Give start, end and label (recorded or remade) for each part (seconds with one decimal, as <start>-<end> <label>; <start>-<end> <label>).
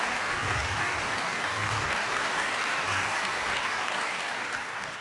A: 0.0-5.0 remade